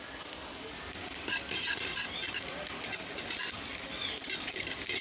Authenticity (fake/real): real